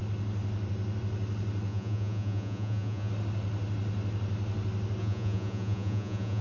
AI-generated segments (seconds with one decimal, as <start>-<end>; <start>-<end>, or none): 1.7-3.1; 5.0-6.4